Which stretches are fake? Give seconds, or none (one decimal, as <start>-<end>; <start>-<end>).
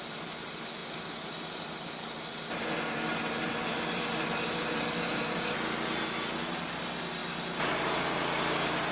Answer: none